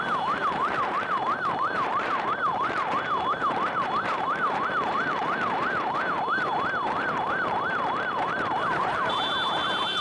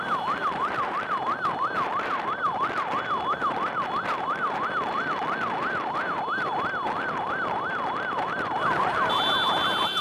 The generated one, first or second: first